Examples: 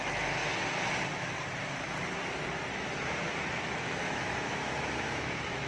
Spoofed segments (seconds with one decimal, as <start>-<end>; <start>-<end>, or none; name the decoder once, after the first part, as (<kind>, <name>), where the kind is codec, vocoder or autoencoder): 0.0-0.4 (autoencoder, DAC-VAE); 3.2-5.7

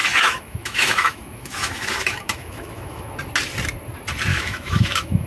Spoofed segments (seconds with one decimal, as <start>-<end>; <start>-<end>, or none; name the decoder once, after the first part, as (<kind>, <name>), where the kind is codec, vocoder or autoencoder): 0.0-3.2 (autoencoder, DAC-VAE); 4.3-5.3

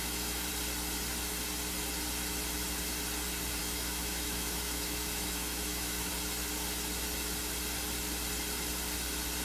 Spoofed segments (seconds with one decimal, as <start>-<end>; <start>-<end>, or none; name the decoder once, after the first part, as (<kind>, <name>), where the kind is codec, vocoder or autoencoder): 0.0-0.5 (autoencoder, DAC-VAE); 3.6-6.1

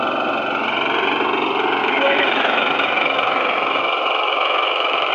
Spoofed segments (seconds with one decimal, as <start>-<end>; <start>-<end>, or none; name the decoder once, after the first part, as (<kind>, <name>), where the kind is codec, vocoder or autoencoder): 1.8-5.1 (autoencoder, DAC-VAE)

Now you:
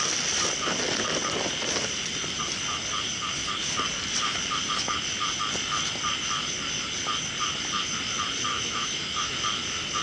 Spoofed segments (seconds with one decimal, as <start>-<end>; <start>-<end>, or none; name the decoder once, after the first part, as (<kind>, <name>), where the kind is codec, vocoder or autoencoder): 8.5-9.3 (autoencoder, DAC-VAE)